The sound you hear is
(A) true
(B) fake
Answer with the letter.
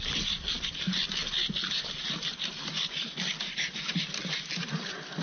A